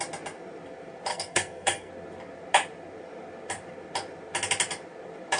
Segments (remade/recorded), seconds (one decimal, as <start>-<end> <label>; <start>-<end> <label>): 0.0-1.1 recorded; 1.1-1.9 remade; 1.9-5.4 recorded